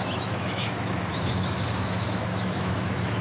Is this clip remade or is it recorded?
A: remade